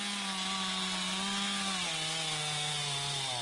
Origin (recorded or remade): recorded